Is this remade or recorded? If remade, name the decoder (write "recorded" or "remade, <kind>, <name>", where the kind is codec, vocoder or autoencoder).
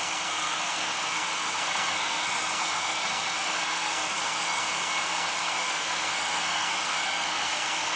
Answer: remade, codec, SNAC